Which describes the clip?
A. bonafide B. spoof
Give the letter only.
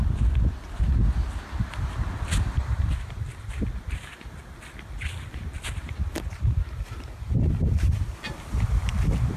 A